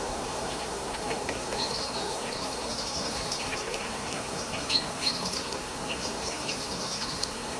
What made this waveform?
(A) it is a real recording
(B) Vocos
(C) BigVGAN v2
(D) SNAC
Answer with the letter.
D